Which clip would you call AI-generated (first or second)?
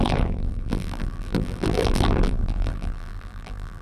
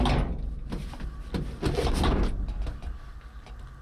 first